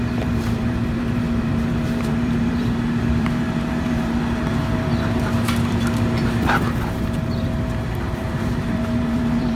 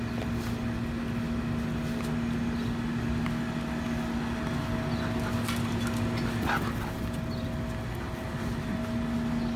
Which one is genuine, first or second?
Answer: second